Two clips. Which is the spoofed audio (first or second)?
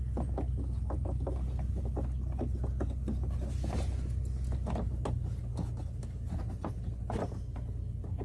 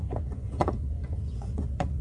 second